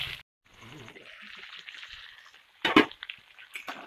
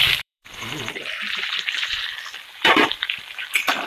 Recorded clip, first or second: first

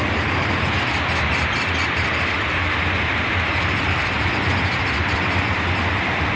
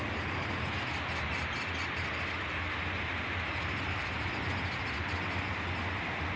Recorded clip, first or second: second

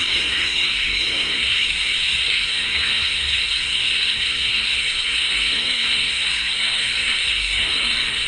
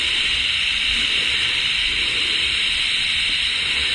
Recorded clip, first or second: second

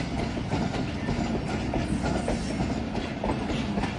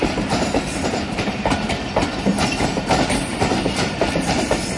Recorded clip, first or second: first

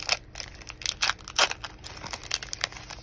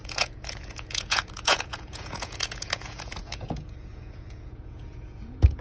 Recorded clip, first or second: first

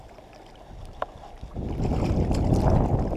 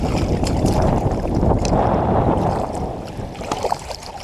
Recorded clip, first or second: first